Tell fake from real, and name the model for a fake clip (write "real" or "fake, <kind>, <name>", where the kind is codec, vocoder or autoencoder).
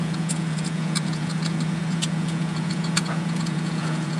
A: fake, vocoder, Vocos